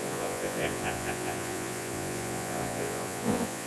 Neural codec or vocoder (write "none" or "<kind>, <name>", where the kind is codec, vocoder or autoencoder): vocoder, Vocos